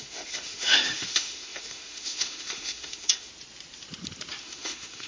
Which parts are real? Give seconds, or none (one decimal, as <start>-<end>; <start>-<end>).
3.3-4.4